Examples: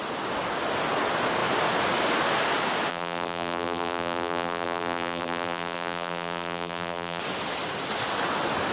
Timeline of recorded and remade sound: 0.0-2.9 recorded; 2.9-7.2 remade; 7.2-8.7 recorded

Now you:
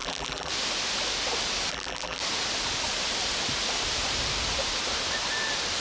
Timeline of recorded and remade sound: 0.0-0.5 remade; 0.5-1.7 recorded; 1.7-2.2 remade; 2.2-5.8 recorded

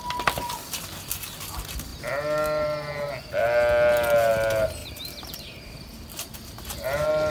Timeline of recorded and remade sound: 0.0-4.8 recorded; 4.8-5.6 remade; 5.6-7.3 recorded